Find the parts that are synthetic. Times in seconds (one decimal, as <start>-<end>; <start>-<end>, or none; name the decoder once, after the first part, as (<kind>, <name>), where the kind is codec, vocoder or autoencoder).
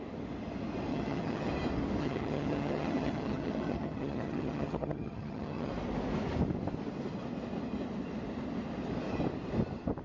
0.9-1.5 (vocoder, HiFi-GAN); 2.0-5.7